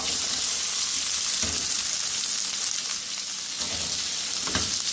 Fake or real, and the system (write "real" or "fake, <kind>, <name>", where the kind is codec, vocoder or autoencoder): real